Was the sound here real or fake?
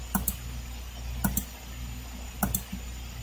real